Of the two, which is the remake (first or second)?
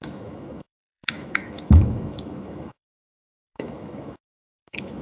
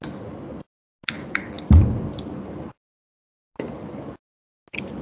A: first